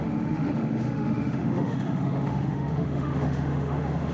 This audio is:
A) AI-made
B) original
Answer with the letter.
A